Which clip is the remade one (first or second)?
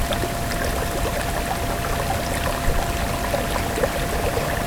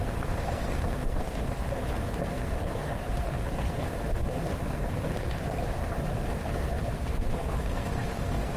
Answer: second